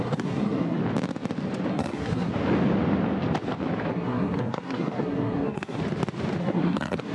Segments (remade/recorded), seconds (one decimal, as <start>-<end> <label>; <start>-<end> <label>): 0.0-0.8 remade; 0.8-1.7 recorded; 1.7-2.3 remade; 2.3-3.9 recorded; 3.9-5.8 remade; 5.8-6.4 recorded; 6.4-7.1 remade

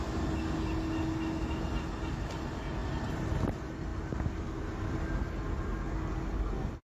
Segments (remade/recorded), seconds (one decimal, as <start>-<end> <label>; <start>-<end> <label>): 0.0-7.0 recorded

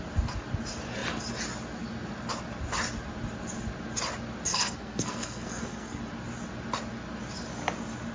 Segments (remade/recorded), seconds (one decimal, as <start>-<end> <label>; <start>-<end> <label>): 0.0-4.5 recorded; 4.5-6.0 remade; 6.0-8.1 recorded

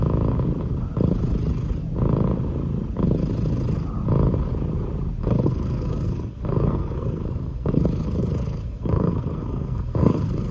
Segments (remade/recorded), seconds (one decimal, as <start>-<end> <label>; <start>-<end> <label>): 0.0-5.2 recorded; 5.2-10.5 remade

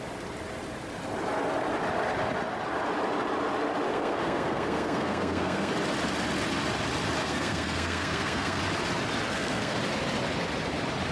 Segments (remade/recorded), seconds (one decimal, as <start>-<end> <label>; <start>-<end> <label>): 0.0-3.9 recorded; 3.9-5.7 remade; 5.7-7.2 recorded; 7.2-8.6 remade; 8.6-9.3 recorded; 9.3-9.8 remade; 9.8-11.1 recorded

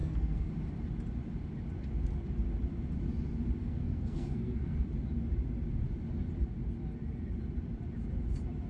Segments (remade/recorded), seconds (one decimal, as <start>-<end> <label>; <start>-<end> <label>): 0.0-0.5 remade; 0.5-3.6 recorded; 3.6-4.9 remade; 4.9-8.7 recorded

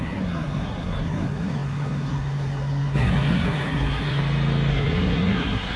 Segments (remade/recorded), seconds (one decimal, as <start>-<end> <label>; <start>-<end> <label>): 0.0-4.2 remade; 4.2-4.7 recorded; 4.7-5.8 remade

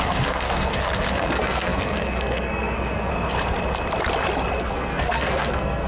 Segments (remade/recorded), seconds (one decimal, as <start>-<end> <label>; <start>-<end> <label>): 0.0-3.1 remade; 3.1-4.6 recorded; 4.6-5.9 remade